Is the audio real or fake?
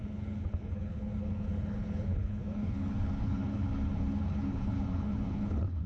fake